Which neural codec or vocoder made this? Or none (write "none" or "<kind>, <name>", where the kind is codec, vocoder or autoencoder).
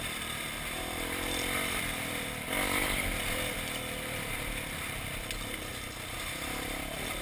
vocoder, BigVGAN v2